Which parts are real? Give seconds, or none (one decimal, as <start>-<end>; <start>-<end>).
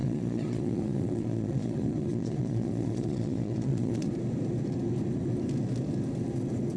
4.1-6.8